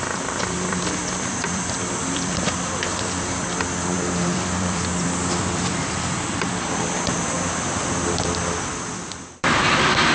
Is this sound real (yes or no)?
no